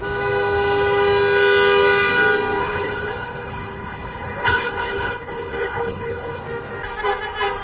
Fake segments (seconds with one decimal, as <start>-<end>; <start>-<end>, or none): 2.6-6.4